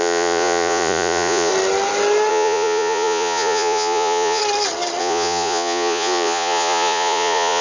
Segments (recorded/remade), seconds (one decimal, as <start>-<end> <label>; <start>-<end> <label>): 0.0-1.5 remade; 1.5-2.3 recorded; 2.3-4.4 remade; 4.4-5.0 recorded; 5.0-7.6 remade